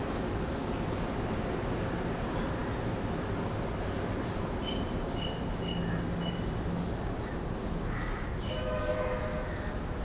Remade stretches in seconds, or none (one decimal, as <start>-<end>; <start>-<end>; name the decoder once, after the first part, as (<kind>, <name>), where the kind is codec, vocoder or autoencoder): none